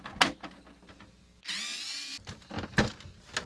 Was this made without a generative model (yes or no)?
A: yes